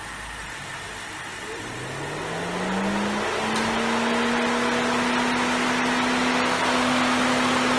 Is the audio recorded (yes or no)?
yes